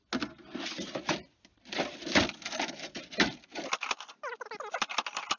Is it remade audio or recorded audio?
recorded